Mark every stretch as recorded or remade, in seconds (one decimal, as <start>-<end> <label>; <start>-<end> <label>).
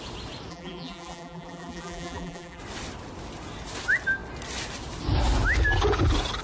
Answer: 0.0-0.5 recorded; 0.5-2.6 remade; 2.6-6.4 recorded